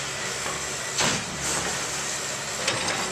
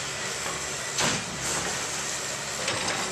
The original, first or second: first